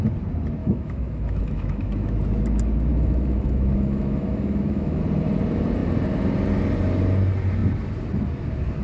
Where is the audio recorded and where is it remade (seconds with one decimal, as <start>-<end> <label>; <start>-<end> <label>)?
0.0-0.6 recorded; 0.6-2.1 remade; 2.1-2.9 recorded; 2.9-5.0 remade; 5.0-8.8 recorded